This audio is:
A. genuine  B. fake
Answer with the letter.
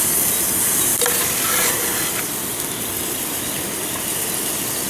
A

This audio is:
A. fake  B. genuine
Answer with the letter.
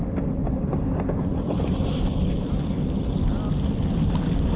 B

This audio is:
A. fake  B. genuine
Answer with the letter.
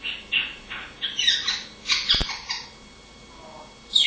B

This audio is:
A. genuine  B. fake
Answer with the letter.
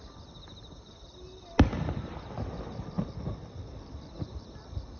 A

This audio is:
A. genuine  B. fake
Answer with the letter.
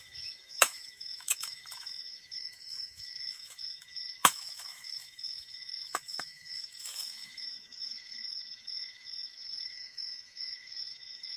B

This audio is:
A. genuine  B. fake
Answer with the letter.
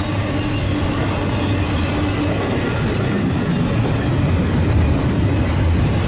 A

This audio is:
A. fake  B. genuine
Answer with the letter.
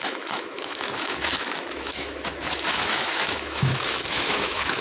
A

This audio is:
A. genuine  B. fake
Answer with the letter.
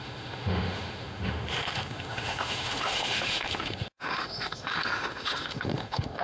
B